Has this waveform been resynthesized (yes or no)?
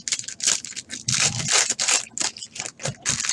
no